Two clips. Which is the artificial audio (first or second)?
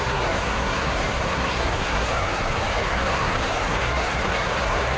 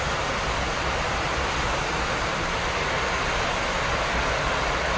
first